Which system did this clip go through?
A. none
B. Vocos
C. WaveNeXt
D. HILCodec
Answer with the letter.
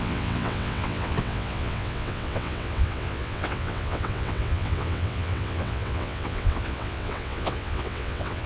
C